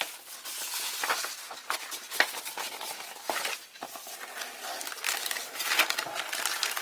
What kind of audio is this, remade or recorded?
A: recorded